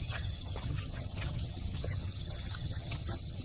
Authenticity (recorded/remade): remade